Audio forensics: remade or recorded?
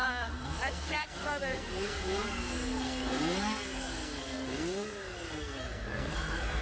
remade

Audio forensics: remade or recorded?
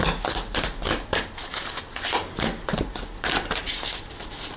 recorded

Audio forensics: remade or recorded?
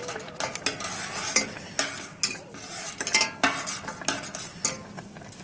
recorded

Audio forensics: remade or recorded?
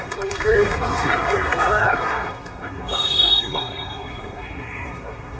remade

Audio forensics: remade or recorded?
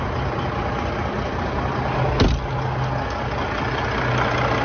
recorded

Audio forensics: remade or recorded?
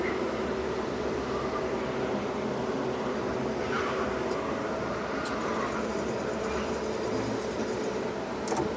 recorded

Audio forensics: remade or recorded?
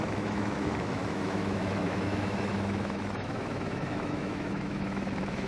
remade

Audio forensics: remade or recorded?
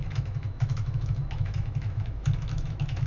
remade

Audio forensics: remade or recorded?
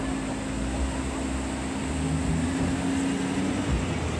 recorded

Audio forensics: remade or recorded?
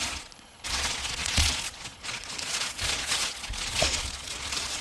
remade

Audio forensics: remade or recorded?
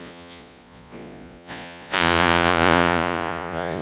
remade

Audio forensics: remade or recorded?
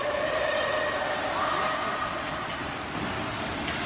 recorded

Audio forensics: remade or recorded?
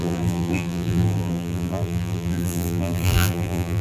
remade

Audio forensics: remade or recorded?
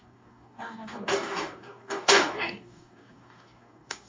remade